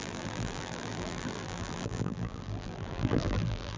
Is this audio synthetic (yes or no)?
yes